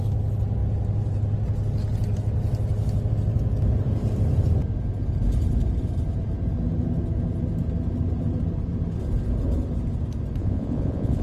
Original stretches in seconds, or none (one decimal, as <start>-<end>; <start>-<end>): 0.0-10.4